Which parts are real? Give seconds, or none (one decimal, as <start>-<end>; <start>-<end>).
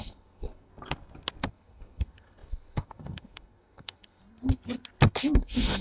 0.7-1.5; 4.2-5.2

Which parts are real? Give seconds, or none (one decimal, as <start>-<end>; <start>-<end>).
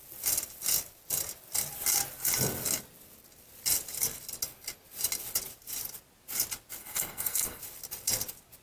0.0-6.8; 7.6-8.6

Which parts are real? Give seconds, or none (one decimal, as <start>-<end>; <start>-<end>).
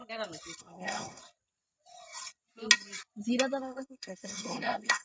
0.0-0.6; 1.2-3.6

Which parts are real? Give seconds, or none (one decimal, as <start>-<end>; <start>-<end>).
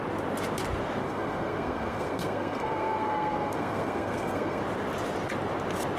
0.0-1.0; 4.6-6.0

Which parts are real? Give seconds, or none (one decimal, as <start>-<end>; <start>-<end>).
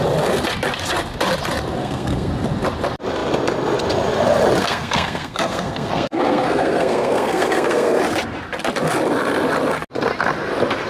0.0-1.8; 2.3-4.6; 8.0-10.9